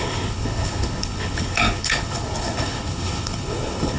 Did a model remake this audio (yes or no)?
yes